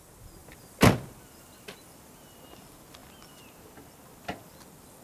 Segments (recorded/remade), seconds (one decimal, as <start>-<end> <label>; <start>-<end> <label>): 0.0-5.0 recorded